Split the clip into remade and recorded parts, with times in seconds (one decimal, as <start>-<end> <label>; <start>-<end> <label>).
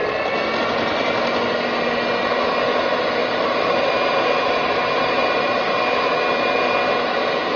0.0-3.2 recorded; 3.2-5.8 remade; 5.8-7.6 recorded